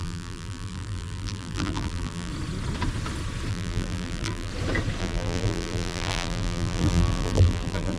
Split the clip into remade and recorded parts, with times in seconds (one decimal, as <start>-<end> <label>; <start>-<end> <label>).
0.0-2.3 remade; 2.3-3.5 recorded; 3.5-4.5 remade; 4.5-5.0 recorded; 5.0-8.0 remade

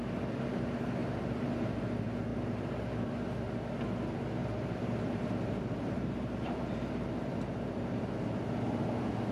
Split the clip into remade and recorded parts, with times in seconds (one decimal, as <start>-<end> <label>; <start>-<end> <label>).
0.0-1.0 recorded; 1.0-1.8 remade; 1.8-2.3 recorded; 2.3-2.9 remade; 2.9-4.4 recorded; 4.4-8.1 remade; 8.1-9.3 recorded

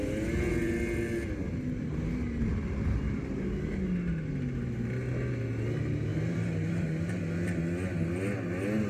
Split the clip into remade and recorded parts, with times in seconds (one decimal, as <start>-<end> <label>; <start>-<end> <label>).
0.0-6.1 recorded; 6.1-7.2 remade; 7.2-8.9 recorded

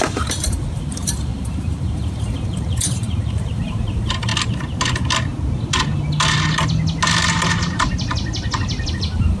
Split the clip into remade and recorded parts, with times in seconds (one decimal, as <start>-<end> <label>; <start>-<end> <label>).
0.0-4.3 remade; 4.3-8.9 recorded; 8.9-9.4 remade

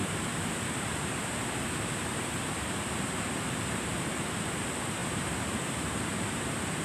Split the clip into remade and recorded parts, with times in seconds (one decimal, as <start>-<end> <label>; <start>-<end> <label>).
0.0-6.8 remade

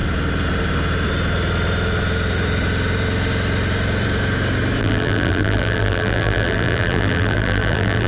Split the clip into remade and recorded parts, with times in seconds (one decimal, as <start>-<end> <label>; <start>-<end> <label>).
0.0-4.8 recorded; 4.8-8.1 remade

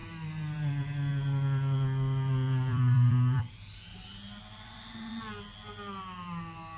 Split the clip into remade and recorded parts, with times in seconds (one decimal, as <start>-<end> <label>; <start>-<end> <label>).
0.0-1.1 remade; 1.1-2.7 recorded; 2.7-5.1 remade; 5.1-6.8 recorded